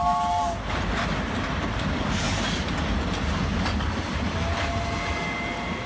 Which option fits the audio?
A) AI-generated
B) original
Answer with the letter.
B